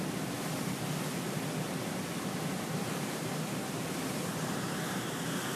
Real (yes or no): no